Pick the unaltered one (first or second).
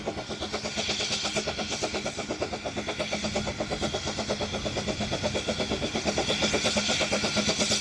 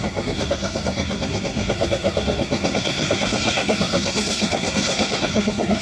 first